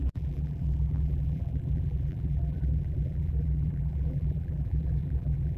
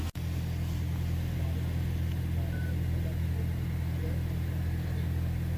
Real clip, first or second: second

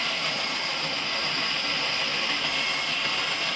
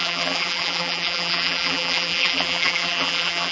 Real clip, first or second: first